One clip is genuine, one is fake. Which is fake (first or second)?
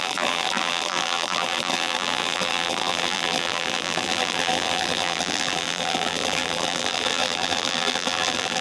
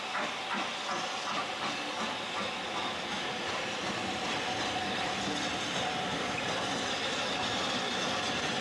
first